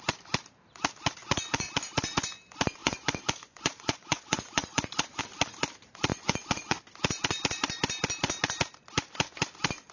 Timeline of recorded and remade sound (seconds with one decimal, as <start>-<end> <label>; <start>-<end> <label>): 0.0-1.2 recorded; 1.2-1.7 remade; 1.7-2.8 recorded; 2.8-5.2 remade; 5.2-6.1 recorded; 6.1-6.8 remade; 6.8-9.9 recorded